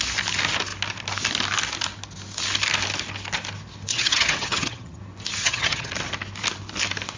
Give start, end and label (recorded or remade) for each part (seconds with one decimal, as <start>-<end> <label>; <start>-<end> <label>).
0.0-3.9 recorded; 3.9-5.0 remade; 5.0-5.4 recorded; 5.4-5.9 remade; 5.9-7.2 recorded